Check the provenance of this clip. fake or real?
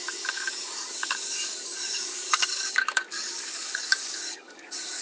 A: fake